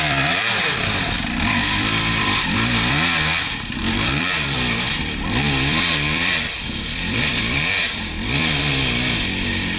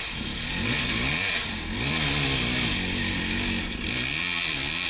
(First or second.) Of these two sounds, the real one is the second